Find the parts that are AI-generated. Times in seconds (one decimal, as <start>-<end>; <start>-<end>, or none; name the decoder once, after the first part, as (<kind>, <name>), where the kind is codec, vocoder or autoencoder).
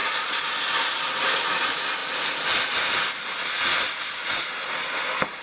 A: 0.0-0.6 (vocoder, Vocos)